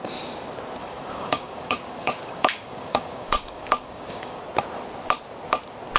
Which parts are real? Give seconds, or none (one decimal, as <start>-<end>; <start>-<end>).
0.0-0.8; 4.4-6.0